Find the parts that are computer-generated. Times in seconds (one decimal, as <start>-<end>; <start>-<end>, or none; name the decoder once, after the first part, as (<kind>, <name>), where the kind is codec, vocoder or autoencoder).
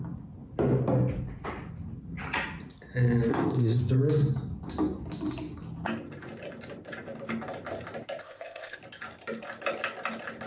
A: 3.3-3.8 (codec, ZipCodec); 8.2-8.8